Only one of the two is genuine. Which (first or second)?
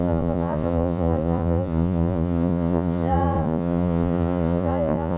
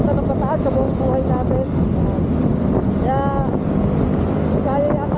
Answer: second